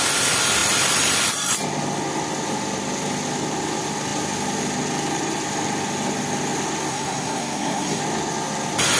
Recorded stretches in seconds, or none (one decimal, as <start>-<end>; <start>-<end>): 0.0-6.9; 8.0-9.0